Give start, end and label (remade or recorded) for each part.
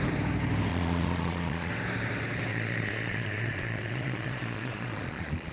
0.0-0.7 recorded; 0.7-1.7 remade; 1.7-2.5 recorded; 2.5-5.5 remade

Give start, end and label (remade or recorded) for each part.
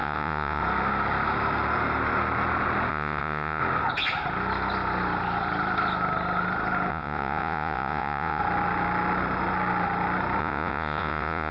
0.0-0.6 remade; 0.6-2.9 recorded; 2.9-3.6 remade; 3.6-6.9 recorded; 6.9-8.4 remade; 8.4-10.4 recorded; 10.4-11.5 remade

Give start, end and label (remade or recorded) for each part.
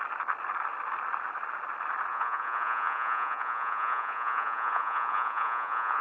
0.0-2.1 recorded; 2.1-6.0 remade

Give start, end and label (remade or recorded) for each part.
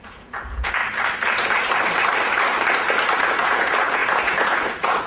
0.0-0.8 remade; 0.8-3.2 recorded; 3.2-5.1 remade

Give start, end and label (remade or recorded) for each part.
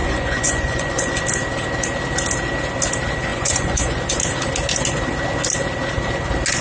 0.0-1.2 remade; 1.2-3.3 recorded; 3.3-4.2 remade; 4.2-6.6 recorded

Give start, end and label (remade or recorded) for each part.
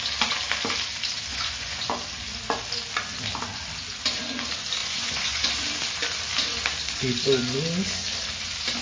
0.0-1.3 recorded; 1.3-1.9 remade; 1.9-4.8 recorded; 4.8-5.5 remade; 5.5-8.8 recorded